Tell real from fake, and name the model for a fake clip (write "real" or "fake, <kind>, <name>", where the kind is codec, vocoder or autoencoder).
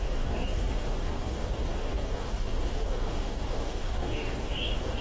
fake, codec, DAC